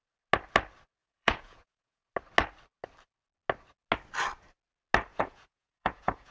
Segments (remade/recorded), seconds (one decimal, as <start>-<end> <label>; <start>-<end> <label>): 0.0-1.0 recorded; 1.0-2.1 remade; 2.1-5.1 recorded; 5.1-6.3 remade